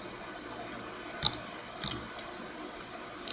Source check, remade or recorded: recorded